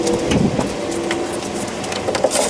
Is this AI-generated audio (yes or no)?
no